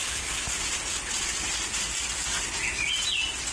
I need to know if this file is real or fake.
real